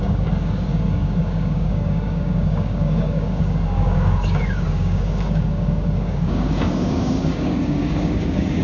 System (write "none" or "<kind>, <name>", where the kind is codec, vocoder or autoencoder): codec, DAC